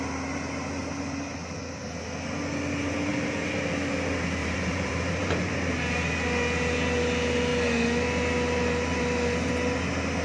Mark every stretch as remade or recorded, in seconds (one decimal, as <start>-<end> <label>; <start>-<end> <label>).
0.0-0.8 recorded; 0.8-1.8 remade; 1.8-4.4 recorded; 4.4-5.5 remade; 5.5-10.2 recorded